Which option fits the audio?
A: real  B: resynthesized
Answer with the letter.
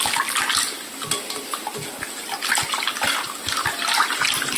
A